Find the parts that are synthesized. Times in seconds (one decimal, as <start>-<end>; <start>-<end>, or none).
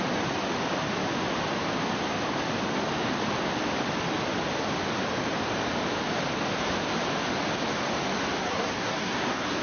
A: 8.4-9.6